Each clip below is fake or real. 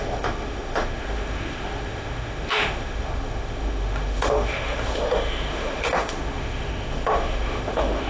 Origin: fake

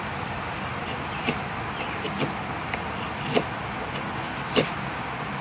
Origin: real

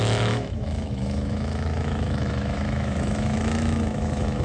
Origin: fake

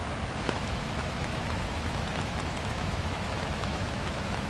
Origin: fake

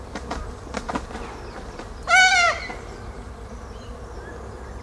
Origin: real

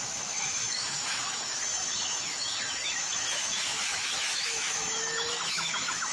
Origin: fake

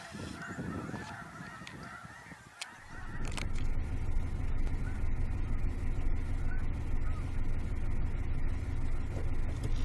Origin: real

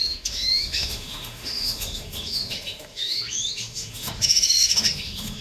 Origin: fake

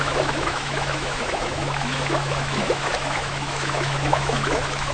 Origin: fake